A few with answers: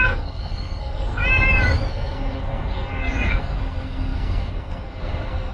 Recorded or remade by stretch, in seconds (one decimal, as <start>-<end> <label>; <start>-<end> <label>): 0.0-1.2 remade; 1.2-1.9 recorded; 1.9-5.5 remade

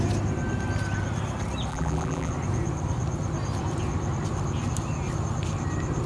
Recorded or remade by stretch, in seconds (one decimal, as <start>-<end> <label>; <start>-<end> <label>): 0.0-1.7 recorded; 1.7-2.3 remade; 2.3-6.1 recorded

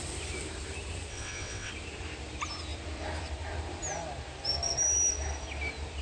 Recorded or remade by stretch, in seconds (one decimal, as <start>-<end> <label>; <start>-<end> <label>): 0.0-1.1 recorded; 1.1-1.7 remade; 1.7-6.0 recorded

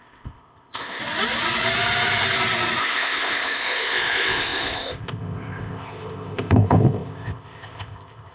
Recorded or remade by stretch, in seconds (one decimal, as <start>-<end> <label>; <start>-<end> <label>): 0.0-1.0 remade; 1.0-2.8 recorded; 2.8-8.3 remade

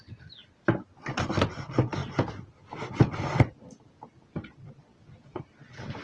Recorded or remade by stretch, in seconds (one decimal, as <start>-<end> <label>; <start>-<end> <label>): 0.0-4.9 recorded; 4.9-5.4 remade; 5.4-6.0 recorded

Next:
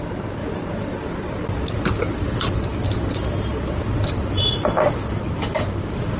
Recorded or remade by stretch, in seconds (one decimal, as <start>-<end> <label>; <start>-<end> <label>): 0.0-0.4 remade; 0.4-4.1 recorded; 4.1-6.2 remade